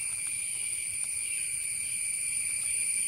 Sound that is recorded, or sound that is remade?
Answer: remade